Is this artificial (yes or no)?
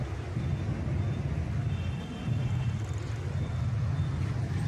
no